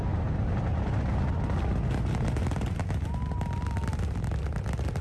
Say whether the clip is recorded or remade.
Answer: recorded